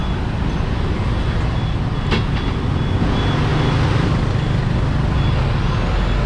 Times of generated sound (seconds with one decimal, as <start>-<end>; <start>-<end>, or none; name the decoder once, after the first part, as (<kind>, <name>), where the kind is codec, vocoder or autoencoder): none